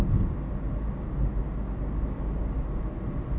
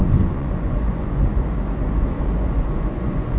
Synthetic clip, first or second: second